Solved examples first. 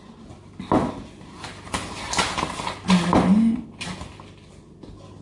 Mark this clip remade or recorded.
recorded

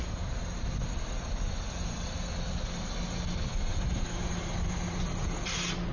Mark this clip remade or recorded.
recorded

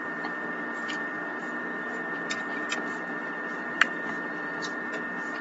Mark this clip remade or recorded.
remade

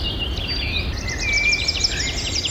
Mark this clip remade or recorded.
recorded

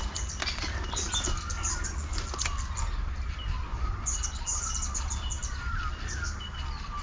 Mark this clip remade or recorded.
recorded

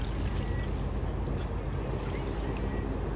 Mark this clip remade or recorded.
recorded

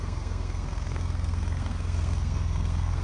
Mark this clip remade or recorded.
remade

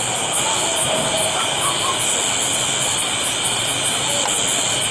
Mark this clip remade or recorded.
recorded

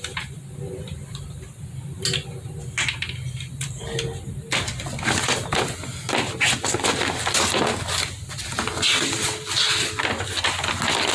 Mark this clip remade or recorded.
recorded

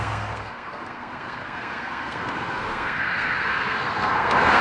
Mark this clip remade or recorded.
remade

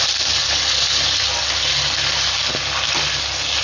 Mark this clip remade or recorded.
recorded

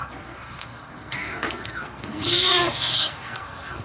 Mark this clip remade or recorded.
remade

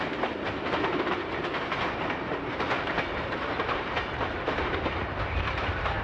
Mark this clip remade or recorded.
remade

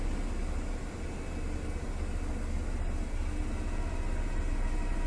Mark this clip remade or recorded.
recorded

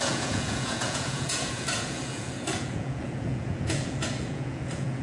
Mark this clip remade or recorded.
remade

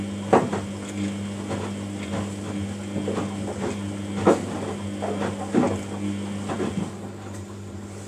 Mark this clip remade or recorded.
recorded